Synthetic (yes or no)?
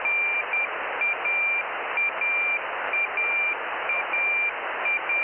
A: no